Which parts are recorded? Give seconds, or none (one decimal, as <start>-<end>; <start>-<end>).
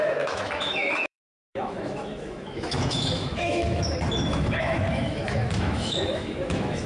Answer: none